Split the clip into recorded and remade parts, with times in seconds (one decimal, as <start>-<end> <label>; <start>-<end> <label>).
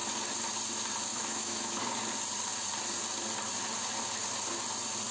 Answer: 0.0-1.1 recorded; 1.1-1.8 remade; 1.8-5.1 recorded